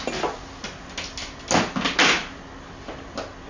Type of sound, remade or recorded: recorded